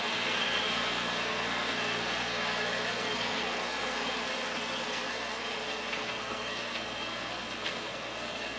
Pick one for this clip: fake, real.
fake